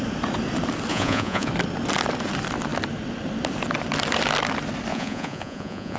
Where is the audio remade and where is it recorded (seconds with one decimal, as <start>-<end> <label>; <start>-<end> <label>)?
0.0-0.9 recorded; 0.9-1.5 remade; 1.5-4.9 recorded; 4.9-6.0 remade